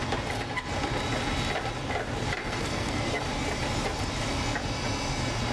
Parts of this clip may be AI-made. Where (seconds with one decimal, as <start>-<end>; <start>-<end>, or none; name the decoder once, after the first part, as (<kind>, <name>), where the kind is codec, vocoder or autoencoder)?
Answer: 2.4-3.2 (codec, SNAC)